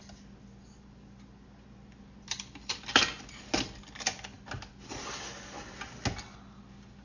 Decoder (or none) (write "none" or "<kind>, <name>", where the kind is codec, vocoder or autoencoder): none